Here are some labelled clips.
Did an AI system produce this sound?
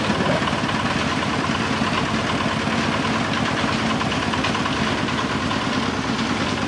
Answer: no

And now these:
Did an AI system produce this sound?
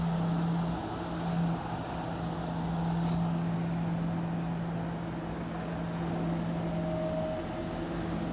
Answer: no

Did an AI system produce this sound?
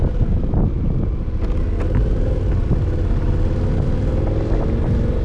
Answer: no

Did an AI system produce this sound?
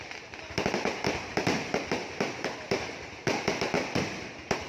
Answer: no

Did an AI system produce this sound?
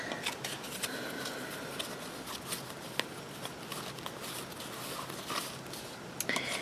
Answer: no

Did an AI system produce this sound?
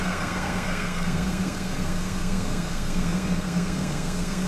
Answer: yes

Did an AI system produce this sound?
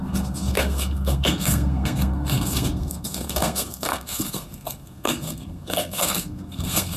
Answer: yes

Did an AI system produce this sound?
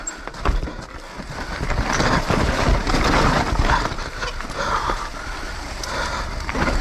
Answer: no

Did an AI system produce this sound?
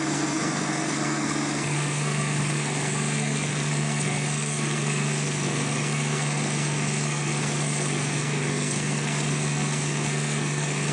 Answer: yes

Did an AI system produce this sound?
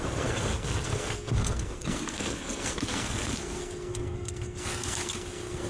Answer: yes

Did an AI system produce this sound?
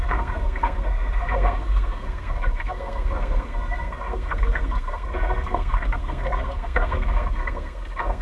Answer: yes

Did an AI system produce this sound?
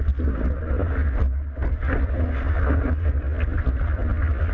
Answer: no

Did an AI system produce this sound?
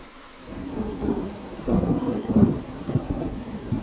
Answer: yes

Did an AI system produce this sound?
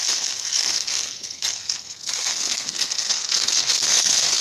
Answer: yes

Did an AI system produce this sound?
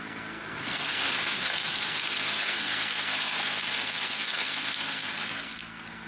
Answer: yes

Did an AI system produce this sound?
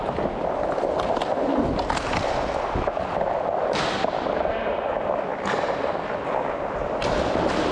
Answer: no